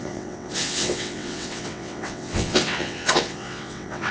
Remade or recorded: remade